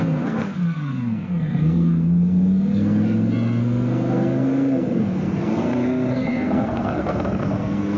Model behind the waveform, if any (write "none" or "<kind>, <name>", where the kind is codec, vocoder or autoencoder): codec, SNAC